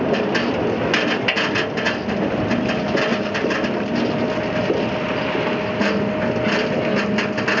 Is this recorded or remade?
recorded